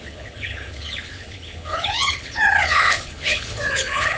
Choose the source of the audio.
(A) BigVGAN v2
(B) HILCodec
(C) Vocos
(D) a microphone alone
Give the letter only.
B